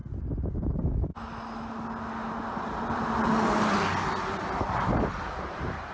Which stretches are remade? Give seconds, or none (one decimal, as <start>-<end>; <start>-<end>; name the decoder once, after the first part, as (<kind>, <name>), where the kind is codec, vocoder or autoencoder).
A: 0.5-1.1 (vocoder, BigVGAN v2); 4.6-5.9